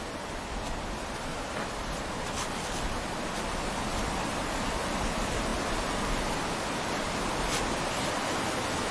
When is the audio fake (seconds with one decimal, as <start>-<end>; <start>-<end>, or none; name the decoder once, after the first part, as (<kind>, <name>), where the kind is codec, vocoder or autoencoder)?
none